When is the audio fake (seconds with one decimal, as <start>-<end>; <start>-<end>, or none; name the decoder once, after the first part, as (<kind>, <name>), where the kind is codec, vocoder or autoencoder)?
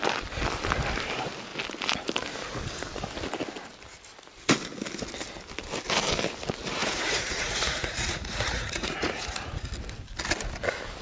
6.8-9.7 (vocoder, Vocos)